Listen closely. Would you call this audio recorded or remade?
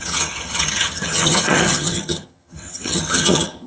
remade